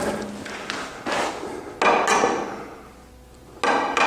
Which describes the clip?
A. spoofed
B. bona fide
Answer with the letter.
B